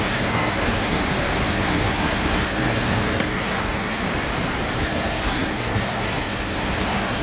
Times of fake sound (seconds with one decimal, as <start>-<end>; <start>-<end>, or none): 0.0-1.0; 1.5-4.0; 4.8-7.2